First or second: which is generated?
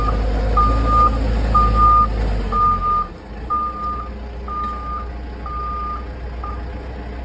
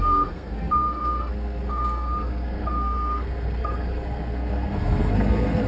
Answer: second